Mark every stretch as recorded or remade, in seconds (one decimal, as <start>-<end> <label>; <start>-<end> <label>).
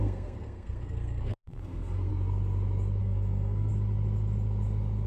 0.0-2.1 remade; 2.1-3.0 recorded; 3.0-3.7 remade; 3.7-5.1 recorded